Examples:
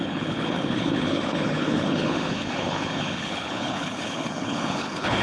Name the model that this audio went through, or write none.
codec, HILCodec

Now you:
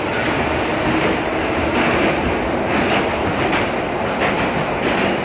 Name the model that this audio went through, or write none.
none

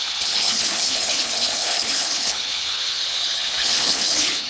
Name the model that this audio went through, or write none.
codec, HILCodec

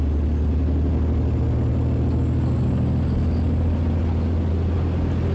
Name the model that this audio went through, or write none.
none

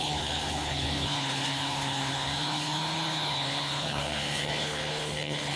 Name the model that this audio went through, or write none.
codec, HILCodec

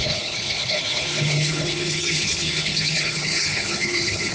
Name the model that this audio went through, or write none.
codec, HILCodec